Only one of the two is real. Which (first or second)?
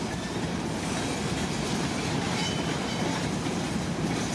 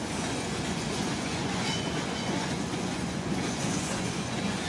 first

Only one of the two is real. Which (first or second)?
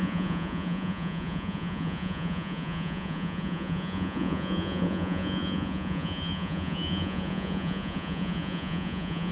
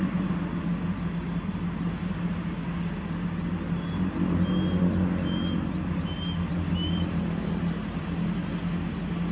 second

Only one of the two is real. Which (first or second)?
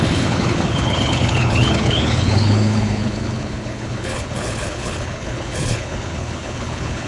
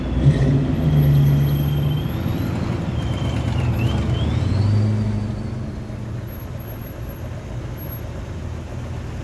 second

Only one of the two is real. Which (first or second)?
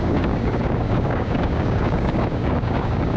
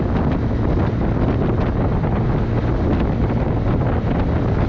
second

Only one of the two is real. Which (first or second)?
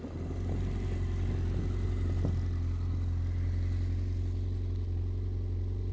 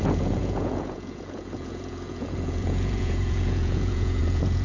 first